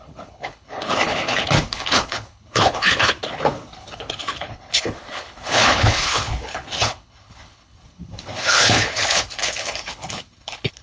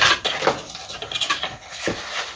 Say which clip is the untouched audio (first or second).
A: second